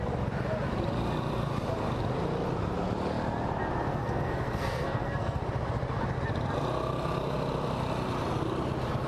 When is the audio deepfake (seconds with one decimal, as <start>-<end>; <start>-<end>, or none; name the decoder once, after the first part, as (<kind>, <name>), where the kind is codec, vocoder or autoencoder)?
3.9-5.4 (codec, SNAC)